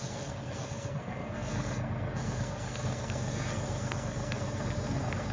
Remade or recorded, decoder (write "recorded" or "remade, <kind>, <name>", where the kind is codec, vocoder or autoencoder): remade, codec, SNAC